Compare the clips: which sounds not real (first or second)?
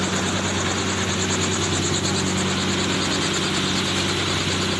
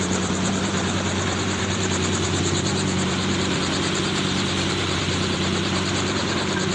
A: second